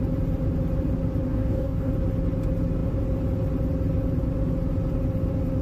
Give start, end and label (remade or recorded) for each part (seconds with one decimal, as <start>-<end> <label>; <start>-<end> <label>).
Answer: 0.0-1.3 recorded; 1.3-1.9 remade; 1.9-5.6 recorded